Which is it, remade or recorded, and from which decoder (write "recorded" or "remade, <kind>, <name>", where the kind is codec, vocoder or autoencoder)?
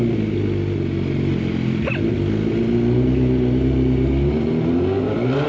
recorded